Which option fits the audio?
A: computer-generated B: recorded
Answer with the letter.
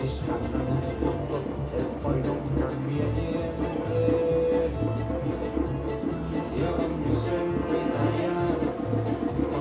B